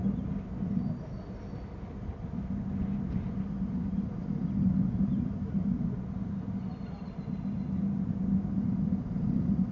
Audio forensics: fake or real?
real